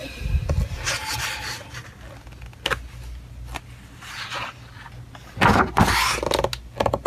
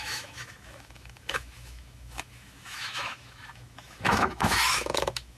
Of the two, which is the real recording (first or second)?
first